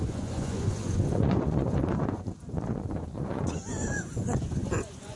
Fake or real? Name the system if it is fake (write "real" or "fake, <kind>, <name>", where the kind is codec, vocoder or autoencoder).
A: fake, vocoder, Vocos